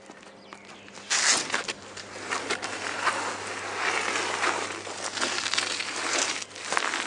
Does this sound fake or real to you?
real